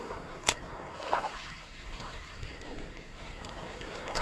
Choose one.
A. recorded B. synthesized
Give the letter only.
B